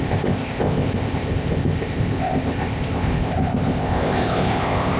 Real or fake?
fake